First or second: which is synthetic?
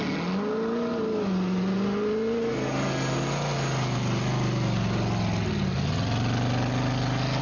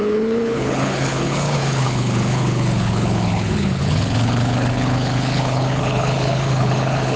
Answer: second